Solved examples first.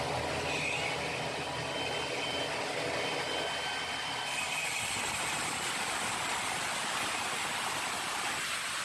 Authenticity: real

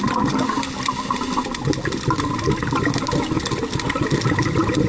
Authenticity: real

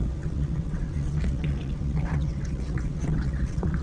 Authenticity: fake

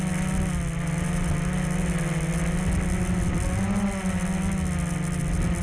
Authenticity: real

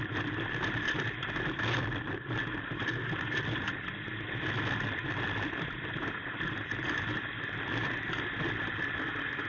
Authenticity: real